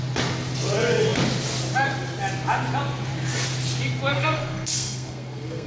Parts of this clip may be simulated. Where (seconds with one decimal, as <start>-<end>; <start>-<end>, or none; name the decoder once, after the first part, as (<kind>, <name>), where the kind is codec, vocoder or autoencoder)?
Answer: 4.1-5.7 (codec, SNAC)